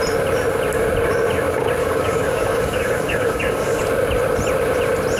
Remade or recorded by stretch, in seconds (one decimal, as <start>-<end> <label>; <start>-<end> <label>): 0.0-1.8 recorded; 1.8-3.8 remade; 3.8-5.2 recorded